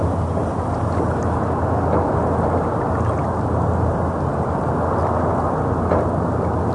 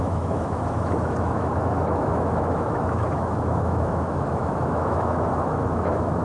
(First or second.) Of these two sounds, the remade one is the second